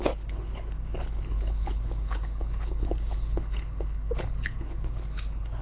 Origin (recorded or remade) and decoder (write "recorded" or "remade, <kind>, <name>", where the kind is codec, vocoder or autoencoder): remade, codec, HILCodec